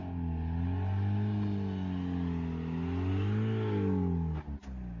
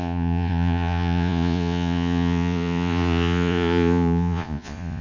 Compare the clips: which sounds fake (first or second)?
second